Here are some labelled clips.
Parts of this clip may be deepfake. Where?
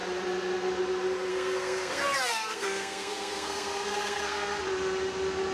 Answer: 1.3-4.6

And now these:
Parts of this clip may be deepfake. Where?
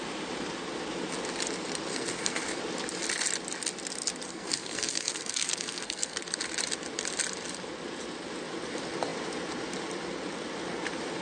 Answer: 1.9-2.6; 4.3-6.2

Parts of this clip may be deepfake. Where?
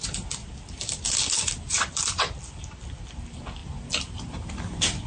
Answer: 0.4-1.9